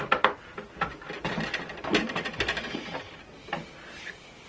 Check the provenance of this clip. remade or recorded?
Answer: recorded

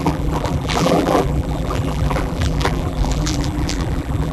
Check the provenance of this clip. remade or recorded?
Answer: remade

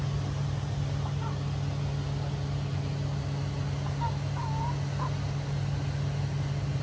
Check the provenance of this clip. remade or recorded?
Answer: recorded